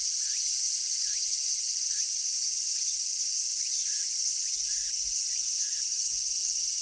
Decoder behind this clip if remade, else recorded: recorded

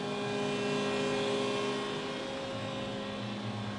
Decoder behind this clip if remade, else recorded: recorded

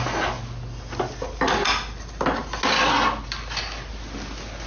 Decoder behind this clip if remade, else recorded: recorded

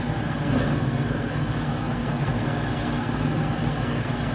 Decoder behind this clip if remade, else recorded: remade, codec, SNAC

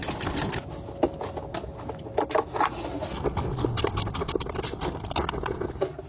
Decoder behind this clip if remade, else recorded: recorded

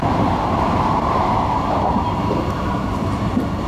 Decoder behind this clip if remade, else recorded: remade, vocoder, BigVGAN v2